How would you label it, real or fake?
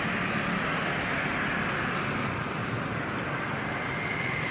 real